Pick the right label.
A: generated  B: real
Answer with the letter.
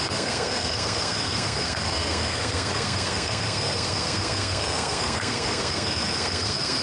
A